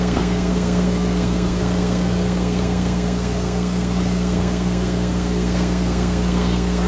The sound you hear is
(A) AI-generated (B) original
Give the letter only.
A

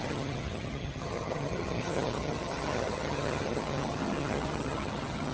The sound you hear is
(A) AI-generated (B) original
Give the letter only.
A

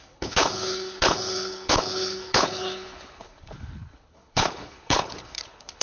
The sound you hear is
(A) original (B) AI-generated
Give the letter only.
B